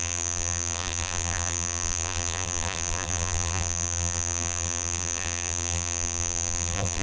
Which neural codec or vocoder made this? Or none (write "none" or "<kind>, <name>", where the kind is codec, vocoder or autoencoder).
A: vocoder, BigVGAN v2